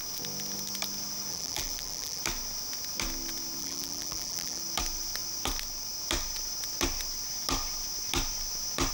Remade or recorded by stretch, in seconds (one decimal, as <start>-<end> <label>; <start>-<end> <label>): 0.0-1.3 recorded; 1.3-2.2 remade; 2.2-3.6 recorded; 3.6-4.6 remade; 4.6-8.9 recorded